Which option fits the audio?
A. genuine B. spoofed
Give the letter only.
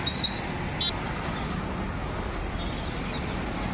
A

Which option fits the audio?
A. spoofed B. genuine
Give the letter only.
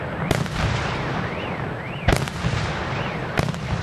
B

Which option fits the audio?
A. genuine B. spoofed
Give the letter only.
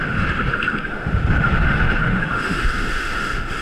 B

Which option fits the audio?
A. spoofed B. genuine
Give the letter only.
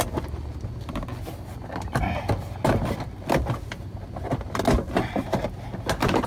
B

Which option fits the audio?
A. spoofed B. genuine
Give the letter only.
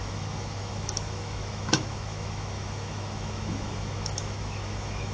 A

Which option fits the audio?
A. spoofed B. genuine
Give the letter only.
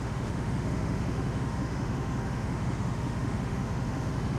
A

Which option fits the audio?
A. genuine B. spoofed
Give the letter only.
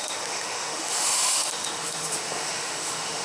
B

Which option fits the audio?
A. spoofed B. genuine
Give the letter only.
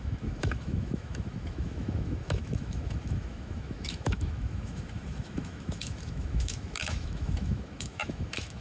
A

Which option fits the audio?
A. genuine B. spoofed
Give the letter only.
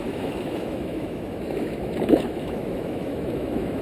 B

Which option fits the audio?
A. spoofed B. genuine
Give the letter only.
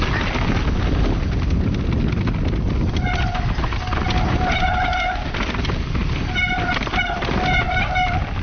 B